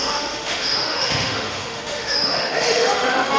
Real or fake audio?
fake